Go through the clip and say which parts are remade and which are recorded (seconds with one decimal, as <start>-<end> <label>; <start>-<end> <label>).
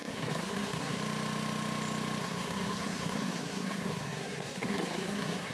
0.0-1.0 remade; 1.0-2.2 recorded; 2.2-5.5 remade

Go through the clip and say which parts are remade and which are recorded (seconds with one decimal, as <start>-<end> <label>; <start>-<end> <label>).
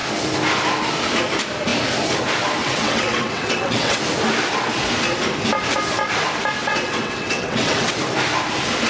0.0-2.6 recorded; 2.6-4.0 remade; 4.0-6.6 recorded; 6.6-8.0 remade; 8.0-8.9 recorded